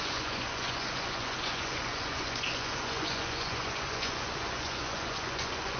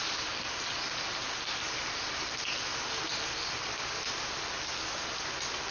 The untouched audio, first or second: second